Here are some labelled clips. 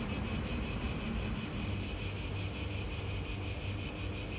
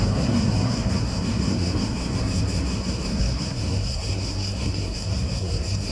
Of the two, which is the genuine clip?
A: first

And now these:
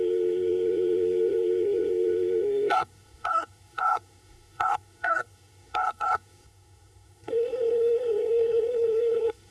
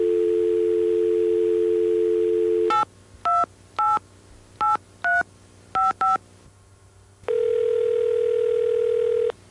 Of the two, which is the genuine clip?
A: second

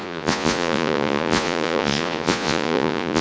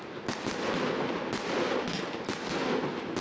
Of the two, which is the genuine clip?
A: second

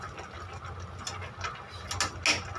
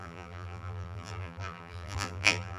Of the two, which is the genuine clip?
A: first